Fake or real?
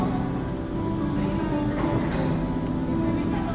real